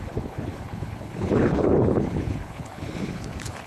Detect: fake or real fake